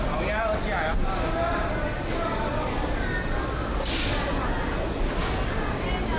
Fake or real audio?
real